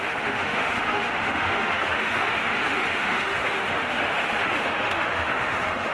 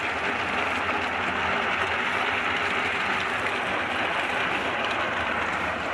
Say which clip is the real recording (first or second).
second